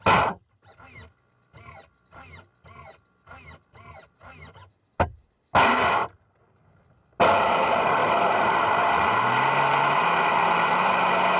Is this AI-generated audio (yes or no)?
no